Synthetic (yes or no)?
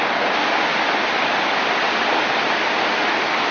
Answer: no